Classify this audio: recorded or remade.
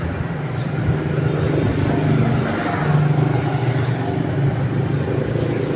recorded